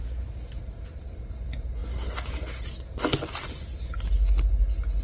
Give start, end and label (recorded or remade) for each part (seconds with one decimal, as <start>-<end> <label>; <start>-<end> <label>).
0.0-5.0 recorded